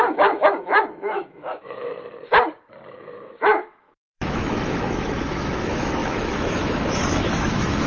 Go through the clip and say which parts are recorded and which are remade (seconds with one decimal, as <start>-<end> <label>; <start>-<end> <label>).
0.0-1.9 remade; 1.9-2.9 recorded; 2.9-7.9 remade